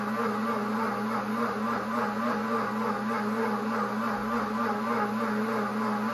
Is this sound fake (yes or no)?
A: no